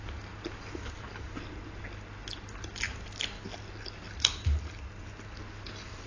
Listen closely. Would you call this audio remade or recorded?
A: recorded